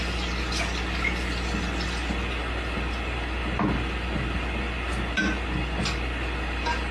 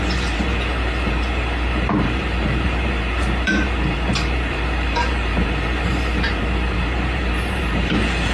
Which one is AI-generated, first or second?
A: second